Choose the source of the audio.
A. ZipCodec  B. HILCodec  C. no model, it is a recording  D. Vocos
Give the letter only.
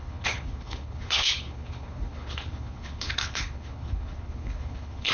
B